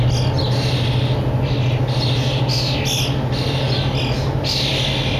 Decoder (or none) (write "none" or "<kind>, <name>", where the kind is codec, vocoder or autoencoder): none